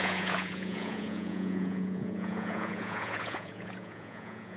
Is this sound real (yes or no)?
no